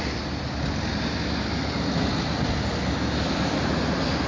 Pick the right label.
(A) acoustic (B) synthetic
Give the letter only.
A